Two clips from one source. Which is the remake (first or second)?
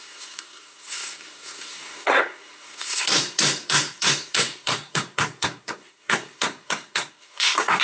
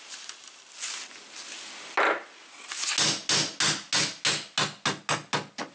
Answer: first